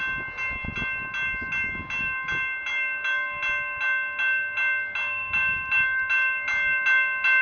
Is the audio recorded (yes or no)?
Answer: yes